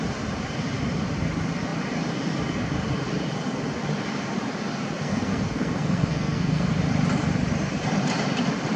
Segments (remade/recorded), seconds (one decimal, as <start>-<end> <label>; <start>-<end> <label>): 0.0-5.0 recorded; 5.0-6.7 remade; 6.7-8.8 recorded